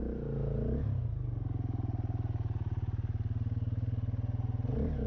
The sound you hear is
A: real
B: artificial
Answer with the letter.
A